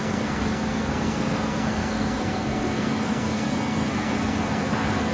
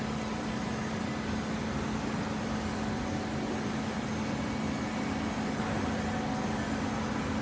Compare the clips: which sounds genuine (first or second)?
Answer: second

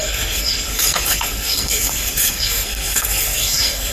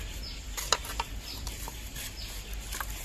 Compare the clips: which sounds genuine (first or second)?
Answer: second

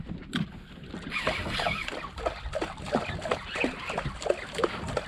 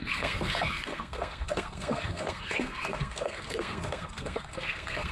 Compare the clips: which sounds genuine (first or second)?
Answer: first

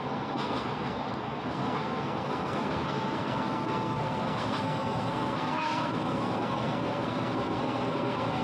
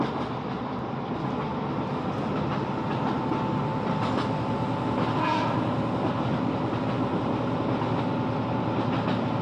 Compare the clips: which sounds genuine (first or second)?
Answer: second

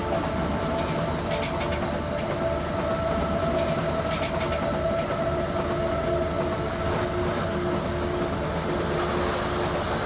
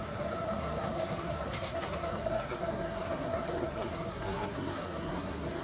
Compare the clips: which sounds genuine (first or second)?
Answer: first